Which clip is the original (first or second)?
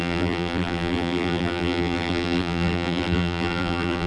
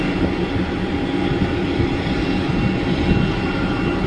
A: second